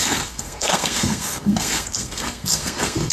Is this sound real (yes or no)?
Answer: no